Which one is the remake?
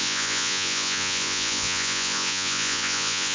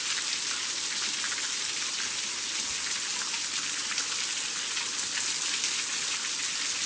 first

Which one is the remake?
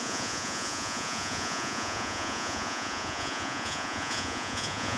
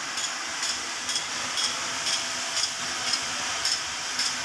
first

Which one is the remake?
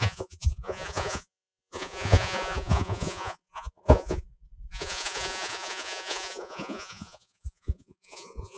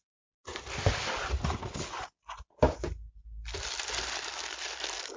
first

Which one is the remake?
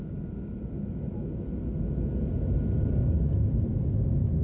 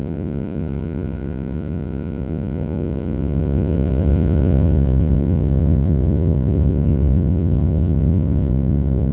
second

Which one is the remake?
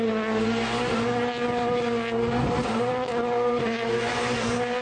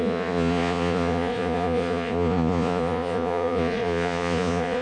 second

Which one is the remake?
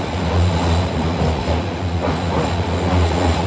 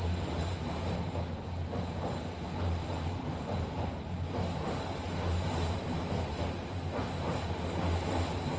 first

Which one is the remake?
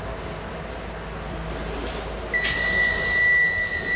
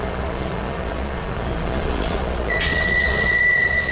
second